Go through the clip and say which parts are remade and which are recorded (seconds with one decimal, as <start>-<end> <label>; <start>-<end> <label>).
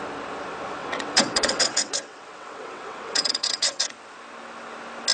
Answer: 0.0-0.8 recorded; 0.8-3.9 remade; 3.9-5.1 recorded